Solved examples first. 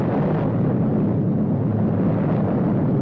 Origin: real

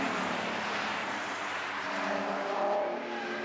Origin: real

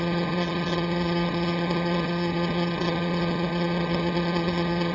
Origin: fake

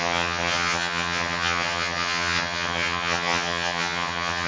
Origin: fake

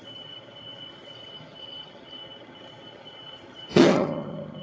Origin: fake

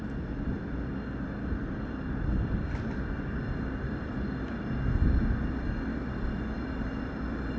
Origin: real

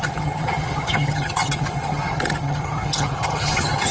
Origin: fake